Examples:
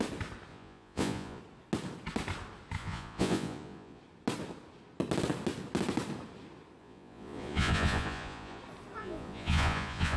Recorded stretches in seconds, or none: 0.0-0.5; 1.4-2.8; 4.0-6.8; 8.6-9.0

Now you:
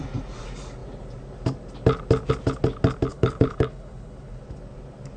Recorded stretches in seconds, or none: 0.0-3.1; 4.4-5.2

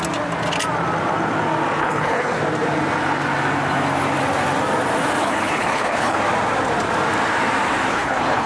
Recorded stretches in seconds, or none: 0.0-1.8; 2.4-5.2; 6.2-7.9

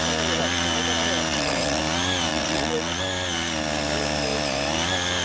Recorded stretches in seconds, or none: 0.0-1.3; 1.8-2.3; 3.0-5.2

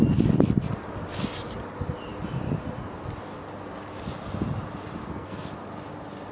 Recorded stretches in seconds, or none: 0.0-5.0; 5.5-6.3